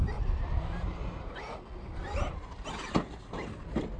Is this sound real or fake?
real